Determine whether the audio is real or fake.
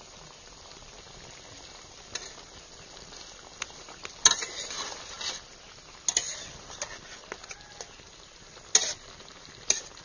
real